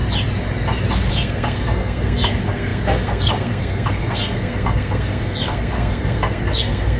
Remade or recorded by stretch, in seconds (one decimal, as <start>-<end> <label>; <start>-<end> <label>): 0.0-1.1 recorded; 1.1-7.0 remade